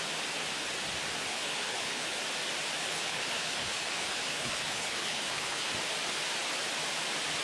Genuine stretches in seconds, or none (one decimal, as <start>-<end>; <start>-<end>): 0.0-1.3; 2.2-2.8; 5.7-7.4